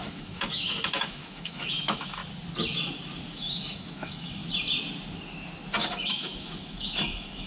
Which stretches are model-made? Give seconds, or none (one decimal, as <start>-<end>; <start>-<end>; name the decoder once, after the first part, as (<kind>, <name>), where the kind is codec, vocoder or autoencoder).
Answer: 0.0-2.2 (autoencoder, DAC-VAE); 3.3-4.4; 5.8-7.5